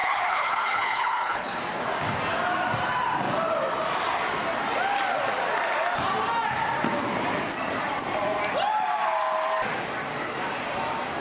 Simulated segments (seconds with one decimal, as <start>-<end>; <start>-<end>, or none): 0.0-1.6